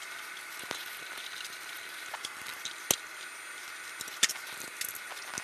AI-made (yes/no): no